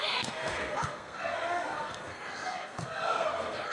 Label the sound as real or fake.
fake